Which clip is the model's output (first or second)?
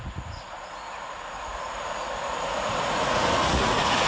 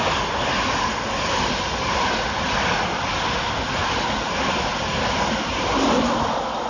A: first